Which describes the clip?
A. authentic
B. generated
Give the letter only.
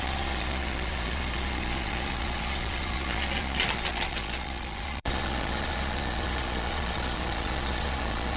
B